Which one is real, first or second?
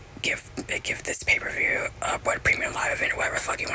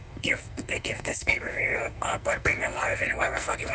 first